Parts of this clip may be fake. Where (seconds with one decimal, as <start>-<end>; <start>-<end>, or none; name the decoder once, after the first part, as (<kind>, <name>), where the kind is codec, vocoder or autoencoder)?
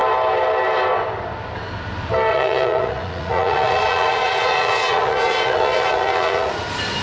2.3-6.5 (vocoder, Vocos)